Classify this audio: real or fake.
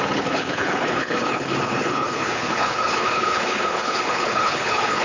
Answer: fake